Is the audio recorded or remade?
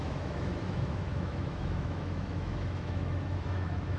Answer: remade